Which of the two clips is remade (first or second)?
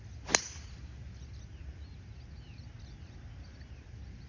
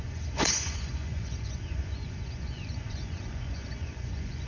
second